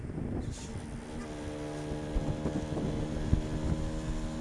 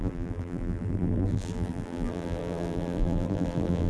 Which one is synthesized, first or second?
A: second